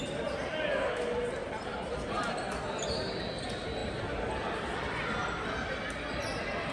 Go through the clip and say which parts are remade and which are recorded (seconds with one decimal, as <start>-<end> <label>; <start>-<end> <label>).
0.0-1.4 recorded; 1.4-2.1 remade; 2.1-6.7 recorded